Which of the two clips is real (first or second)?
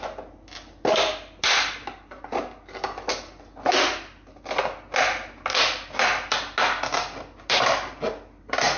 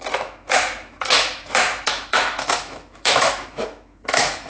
first